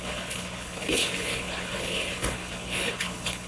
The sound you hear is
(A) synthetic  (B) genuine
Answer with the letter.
A